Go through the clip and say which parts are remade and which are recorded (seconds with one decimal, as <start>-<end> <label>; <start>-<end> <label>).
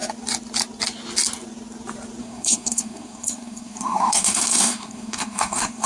0.0-2.2 recorded; 2.2-5.9 remade